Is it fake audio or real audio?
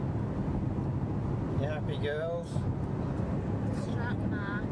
real